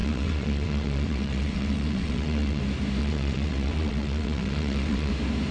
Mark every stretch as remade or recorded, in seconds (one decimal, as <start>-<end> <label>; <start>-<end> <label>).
0.0-2.6 remade; 2.6-3.0 recorded; 3.0-5.1 remade; 5.1-5.5 recorded